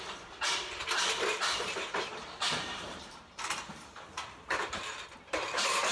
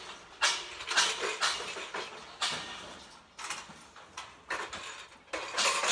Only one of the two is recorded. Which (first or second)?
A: second